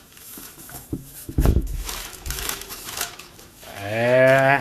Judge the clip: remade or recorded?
remade